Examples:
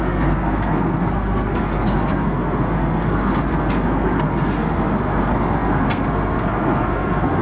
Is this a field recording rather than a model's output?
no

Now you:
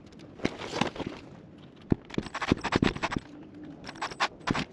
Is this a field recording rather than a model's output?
yes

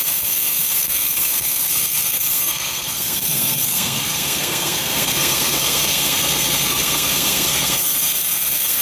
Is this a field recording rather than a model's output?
no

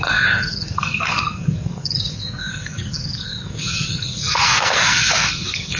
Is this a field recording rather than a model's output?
no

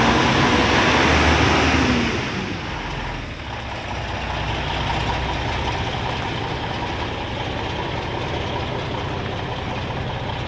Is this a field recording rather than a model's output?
yes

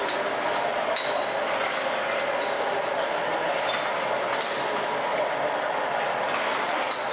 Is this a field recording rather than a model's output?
yes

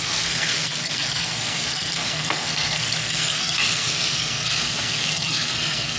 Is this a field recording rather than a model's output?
no